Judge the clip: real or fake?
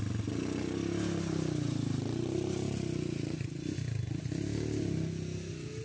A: real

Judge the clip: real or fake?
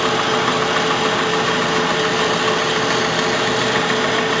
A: real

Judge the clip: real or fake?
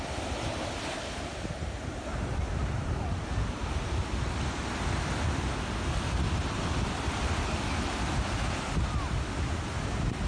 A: real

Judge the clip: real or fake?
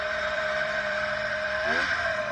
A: fake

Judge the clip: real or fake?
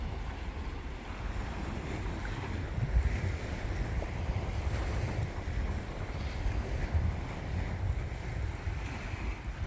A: real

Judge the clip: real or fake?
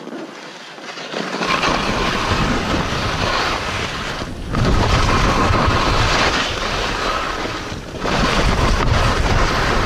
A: real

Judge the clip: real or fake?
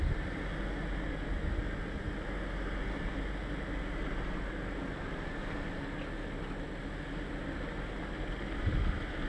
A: real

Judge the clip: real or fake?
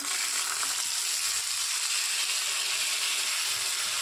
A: real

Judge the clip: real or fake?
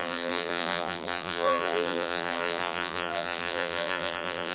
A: fake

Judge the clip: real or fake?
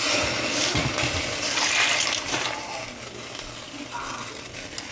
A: real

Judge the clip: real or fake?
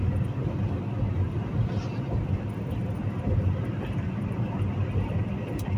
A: real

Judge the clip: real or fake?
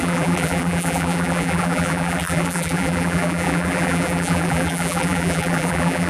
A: fake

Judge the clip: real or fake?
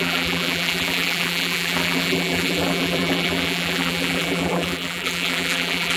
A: fake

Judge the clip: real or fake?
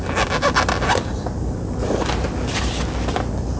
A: real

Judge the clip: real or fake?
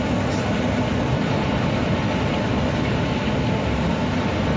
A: real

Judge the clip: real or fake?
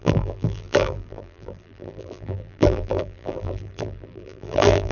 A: fake